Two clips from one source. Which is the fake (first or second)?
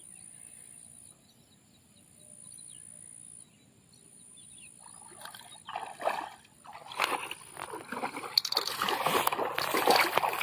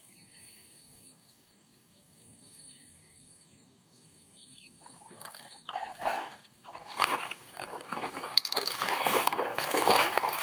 second